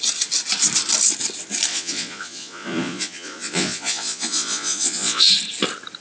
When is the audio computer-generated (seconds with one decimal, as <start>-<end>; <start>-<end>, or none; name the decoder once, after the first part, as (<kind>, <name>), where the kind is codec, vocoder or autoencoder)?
1.7-5.3 (vocoder, Vocos)